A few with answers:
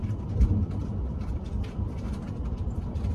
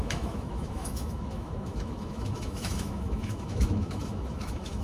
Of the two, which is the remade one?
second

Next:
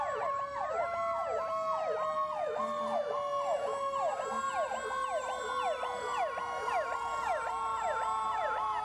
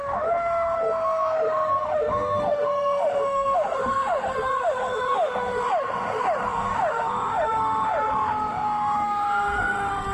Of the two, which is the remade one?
second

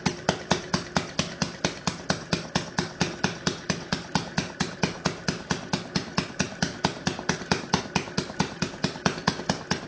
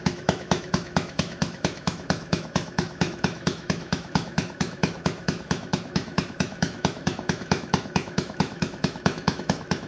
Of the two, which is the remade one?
second